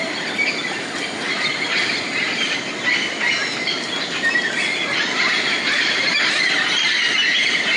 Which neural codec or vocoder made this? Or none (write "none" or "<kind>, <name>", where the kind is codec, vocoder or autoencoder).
none